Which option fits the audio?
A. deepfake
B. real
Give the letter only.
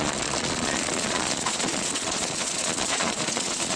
A